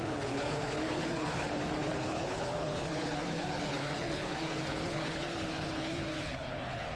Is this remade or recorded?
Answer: remade